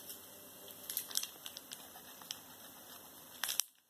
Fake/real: real